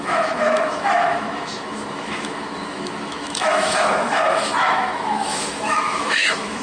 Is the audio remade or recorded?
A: remade